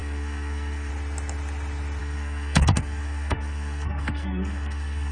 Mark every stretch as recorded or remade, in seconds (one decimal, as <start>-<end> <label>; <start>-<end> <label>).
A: 0.0-0.9 remade; 0.9-2.0 recorded; 2.0-5.1 remade